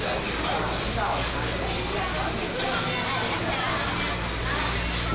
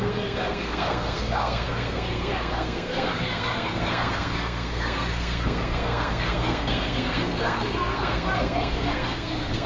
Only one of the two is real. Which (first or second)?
first